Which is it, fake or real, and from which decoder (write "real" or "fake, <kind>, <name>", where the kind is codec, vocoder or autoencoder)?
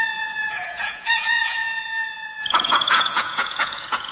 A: fake, vocoder, Vocos